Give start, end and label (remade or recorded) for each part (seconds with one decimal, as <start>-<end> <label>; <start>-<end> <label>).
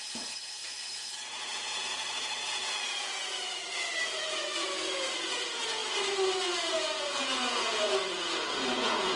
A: 0.0-3.6 remade; 3.6-4.6 recorded; 4.6-5.8 remade; 5.8-6.6 recorded; 6.6-9.2 remade